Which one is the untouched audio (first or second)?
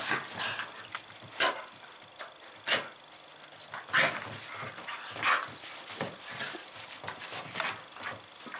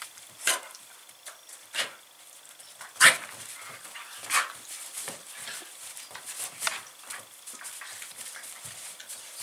first